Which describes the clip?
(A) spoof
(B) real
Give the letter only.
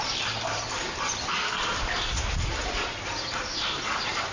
A